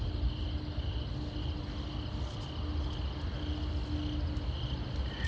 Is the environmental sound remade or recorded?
recorded